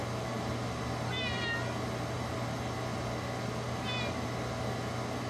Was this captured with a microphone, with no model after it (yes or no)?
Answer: yes